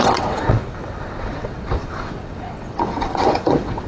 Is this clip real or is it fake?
fake